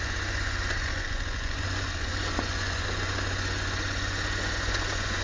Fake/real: fake